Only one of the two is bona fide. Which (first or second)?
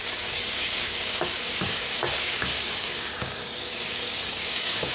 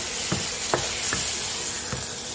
second